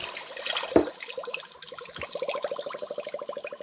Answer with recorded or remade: recorded